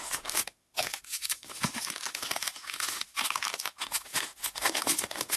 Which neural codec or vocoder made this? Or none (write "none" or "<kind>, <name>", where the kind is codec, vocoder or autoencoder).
autoencoder, DAC-VAE